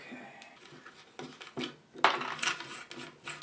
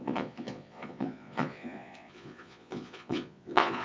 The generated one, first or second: second